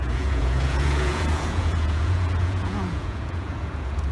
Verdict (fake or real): fake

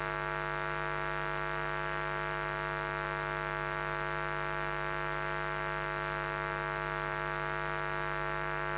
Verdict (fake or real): real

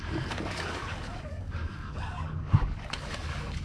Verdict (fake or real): fake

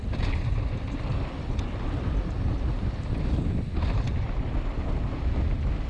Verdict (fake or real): real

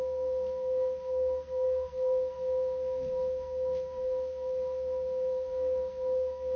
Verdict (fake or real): fake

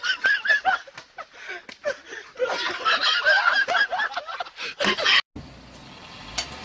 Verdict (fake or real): real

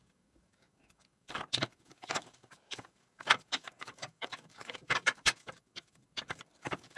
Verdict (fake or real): fake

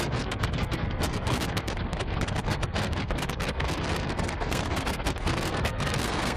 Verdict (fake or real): fake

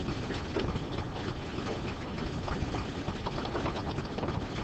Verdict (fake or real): real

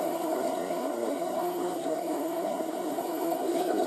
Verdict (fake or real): fake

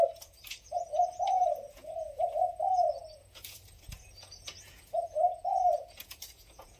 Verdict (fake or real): fake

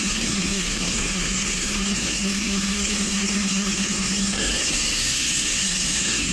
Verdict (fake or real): fake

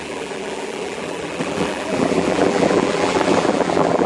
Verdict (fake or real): fake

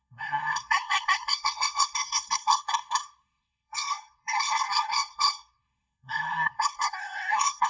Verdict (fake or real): fake